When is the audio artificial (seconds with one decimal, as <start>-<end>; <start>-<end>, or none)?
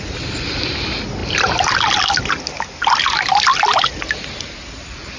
none